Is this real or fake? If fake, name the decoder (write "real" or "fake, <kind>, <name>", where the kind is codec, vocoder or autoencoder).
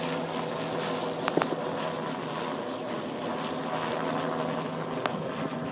real